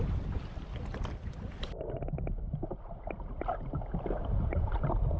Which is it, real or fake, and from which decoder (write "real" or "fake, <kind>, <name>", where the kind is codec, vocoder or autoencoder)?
real